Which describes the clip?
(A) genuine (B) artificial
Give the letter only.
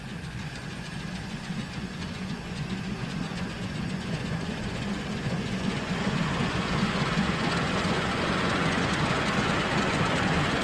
B